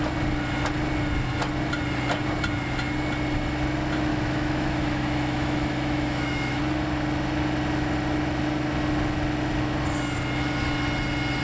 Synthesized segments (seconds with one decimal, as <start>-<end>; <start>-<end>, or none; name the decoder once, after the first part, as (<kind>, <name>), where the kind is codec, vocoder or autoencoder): 4.1-6.6 (autoencoder, DAC-VAE)